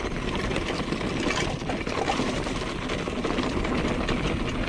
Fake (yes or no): no